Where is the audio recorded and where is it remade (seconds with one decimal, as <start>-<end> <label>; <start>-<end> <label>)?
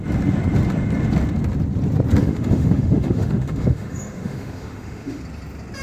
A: 0.0-2.2 recorded; 2.2-5.2 remade; 5.2-5.8 recorded